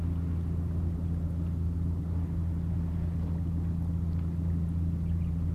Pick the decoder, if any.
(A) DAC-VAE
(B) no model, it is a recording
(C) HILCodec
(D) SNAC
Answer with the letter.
B